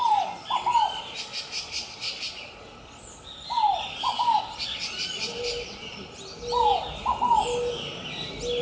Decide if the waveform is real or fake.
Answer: real